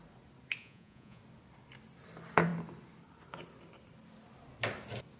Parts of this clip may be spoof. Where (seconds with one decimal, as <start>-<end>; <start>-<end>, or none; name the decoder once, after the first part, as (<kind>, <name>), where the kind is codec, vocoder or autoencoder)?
0.6-1.2 (vocoder, Vocos)